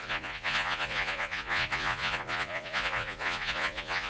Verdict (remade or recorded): remade